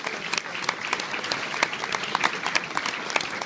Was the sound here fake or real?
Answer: fake